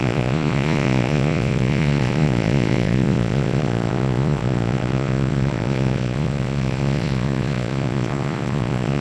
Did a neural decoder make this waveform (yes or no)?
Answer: yes